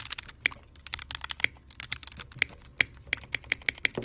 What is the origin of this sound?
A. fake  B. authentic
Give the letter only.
B